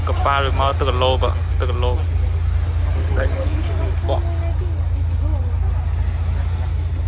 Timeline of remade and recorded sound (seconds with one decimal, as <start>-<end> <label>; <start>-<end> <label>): 0.0-3.0 recorded; 3.0-3.7 remade; 3.7-7.1 recorded